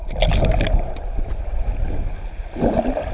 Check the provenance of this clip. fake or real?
real